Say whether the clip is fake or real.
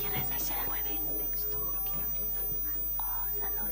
real